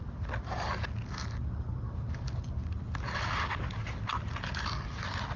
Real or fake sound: real